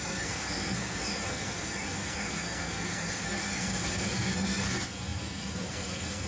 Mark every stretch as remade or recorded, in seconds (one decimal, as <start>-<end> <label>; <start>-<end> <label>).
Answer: 0.0-6.3 remade